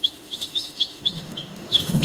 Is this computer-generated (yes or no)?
yes